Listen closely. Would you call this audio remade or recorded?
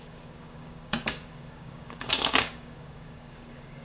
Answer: remade